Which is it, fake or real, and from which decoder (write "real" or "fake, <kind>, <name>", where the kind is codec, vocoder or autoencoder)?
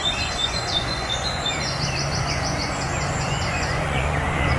fake, vocoder, Vocos